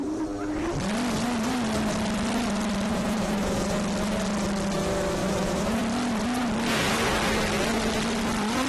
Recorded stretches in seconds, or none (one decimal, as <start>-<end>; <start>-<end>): 0.0-2.9; 3.6-5.2; 5.8-8.7